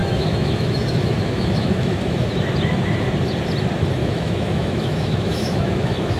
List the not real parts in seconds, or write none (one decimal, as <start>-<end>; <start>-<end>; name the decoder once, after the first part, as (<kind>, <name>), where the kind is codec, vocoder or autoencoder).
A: 0.0-2.3 (autoencoder, DAC-VAE); 4.0-6.2

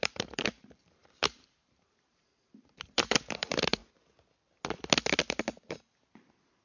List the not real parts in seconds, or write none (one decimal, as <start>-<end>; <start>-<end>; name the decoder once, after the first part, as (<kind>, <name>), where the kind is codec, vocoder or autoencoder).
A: 0.0-3.8 (vocoder, BigVGAN v2)

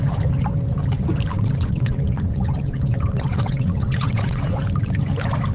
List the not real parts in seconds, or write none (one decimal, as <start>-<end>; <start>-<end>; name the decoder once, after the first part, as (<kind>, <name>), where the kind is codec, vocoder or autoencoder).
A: 1.3-4.6 (vocoder, WaveNeXt)